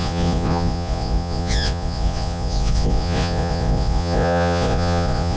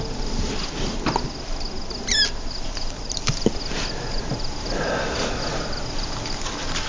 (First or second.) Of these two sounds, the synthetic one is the first